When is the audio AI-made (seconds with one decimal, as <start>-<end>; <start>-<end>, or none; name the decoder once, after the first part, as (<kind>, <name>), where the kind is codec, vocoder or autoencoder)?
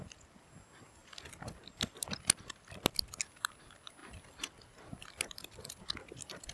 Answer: none